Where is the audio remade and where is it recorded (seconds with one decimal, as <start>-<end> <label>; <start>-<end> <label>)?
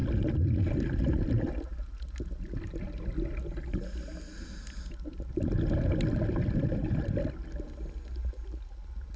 0.0-9.2 recorded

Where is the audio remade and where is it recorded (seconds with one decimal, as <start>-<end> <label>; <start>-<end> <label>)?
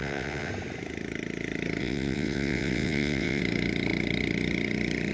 0.0-0.5 remade; 0.5-1.8 recorded; 1.8-3.4 remade; 3.4-5.1 recorded